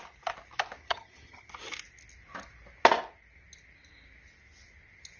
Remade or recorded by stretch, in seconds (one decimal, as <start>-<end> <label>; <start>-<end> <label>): 0.0-0.8 recorded; 0.8-1.5 remade; 1.5-5.2 recorded